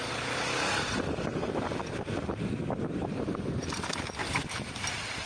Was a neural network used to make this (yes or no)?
no